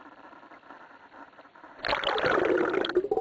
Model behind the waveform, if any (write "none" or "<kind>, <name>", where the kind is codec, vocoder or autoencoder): none